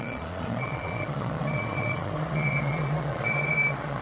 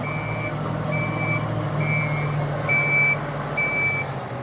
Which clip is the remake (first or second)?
first